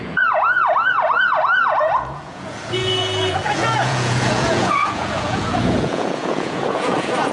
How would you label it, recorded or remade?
remade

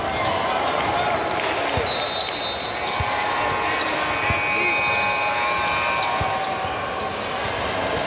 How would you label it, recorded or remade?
recorded